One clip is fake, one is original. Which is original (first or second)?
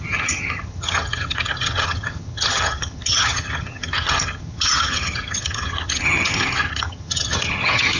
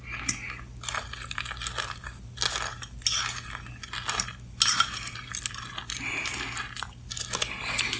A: second